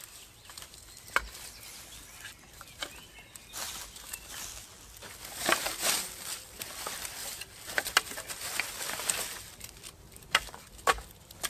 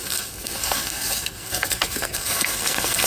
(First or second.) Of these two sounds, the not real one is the second